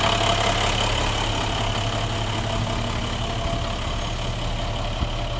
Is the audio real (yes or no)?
yes